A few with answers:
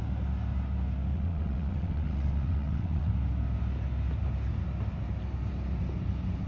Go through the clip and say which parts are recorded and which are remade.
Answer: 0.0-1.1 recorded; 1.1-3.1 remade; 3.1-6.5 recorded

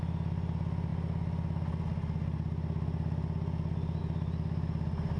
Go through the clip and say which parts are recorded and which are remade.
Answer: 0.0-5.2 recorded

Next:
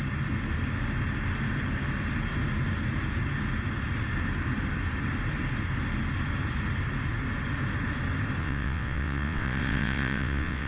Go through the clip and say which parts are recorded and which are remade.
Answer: 0.0-8.4 recorded; 8.4-10.7 remade